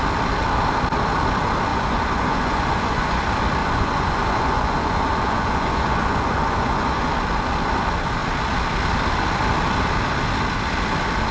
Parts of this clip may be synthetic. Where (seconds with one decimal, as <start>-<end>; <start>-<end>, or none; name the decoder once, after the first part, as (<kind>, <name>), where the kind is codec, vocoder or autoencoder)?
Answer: 1.7-3.2 (vocoder, Vocos); 3.6-7.1